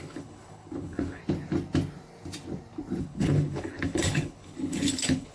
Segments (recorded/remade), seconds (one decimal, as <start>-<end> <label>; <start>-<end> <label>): 0.0-1.2 remade; 1.2-3.0 recorded; 3.0-5.3 remade